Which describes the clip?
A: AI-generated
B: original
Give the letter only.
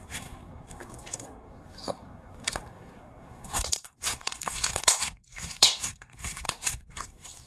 A